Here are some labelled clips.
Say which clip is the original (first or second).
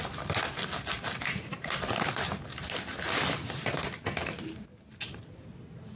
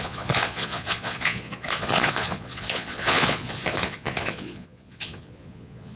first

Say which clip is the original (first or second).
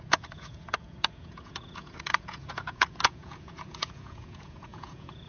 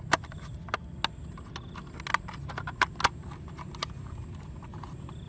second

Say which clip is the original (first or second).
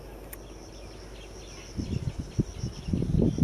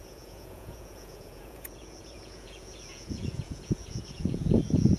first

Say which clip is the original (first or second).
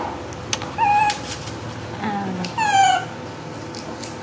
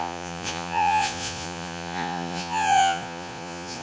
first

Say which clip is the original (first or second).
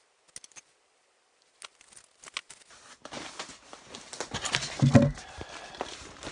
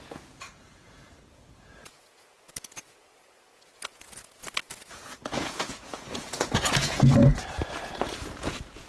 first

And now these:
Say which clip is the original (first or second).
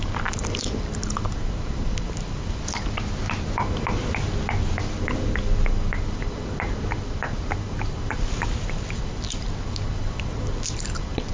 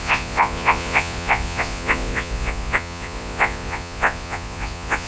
first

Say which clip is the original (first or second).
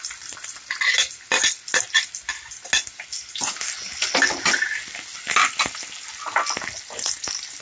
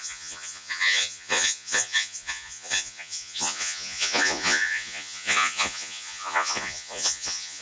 first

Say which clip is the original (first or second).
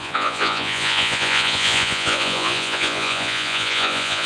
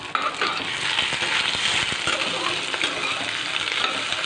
second